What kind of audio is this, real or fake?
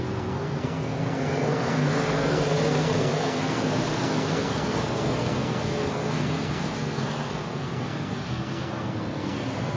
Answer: fake